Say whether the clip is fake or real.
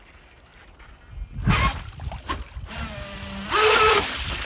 real